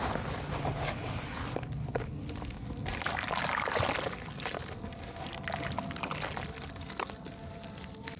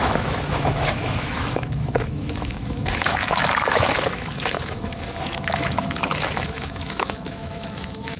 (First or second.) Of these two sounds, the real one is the first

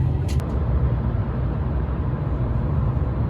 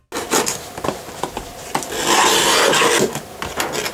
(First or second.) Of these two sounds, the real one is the second